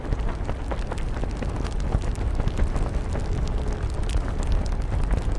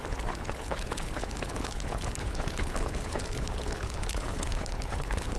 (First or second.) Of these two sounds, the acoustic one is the first